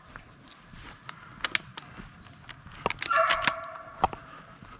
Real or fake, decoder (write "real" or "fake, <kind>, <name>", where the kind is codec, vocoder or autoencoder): real